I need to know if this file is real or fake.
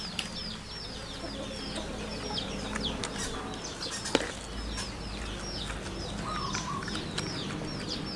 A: real